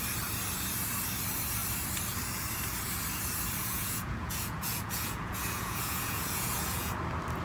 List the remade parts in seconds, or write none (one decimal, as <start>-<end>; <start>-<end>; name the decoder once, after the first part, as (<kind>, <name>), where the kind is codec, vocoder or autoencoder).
3.6-6.9 (vocoder, Vocos)